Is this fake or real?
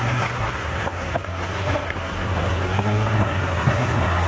fake